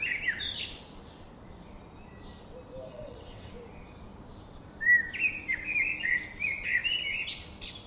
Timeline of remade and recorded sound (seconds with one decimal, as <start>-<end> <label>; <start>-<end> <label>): 0.0-2.9 recorded; 2.9-3.5 remade; 3.5-7.9 recorded

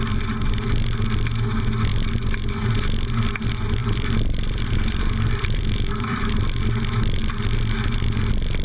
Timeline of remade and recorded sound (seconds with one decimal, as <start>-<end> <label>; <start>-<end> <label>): 0.0-3.8 recorded; 3.8-6.3 remade; 6.3-8.6 recorded

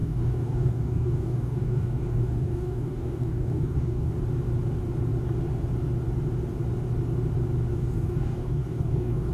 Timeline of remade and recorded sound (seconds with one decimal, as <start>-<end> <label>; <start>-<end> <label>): 0.0-4.1 remade; 4.1-7.7 recorded; 7.7-9.3 remade

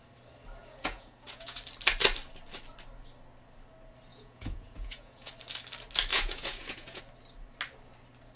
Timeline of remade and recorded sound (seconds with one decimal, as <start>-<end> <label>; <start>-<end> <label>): 0.0-0.6 recorded; 0.6-1.6 remade; 1.6-4.1 recorded; 4.1-5.3 remade; 5.3-6.1 recorded; 6.1-7.0 remade; 7.0-8.4 recorded

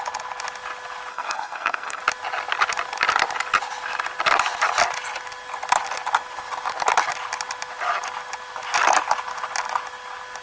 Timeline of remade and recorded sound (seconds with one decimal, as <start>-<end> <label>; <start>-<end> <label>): 0.0-1.1 recorded; 1.1-2.0 remade; 2.0-10.4 recorded

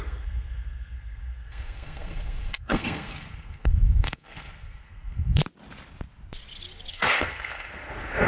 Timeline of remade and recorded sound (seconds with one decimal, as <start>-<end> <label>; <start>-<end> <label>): 0.0-5.4 remade; 5.4-6.9 recorded; 6.9-8.3 remade